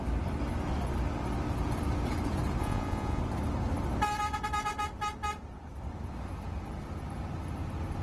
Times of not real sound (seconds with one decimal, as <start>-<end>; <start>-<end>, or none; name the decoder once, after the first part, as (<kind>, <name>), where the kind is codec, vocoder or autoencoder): 2.6-3.2 (vocoder, Vocos)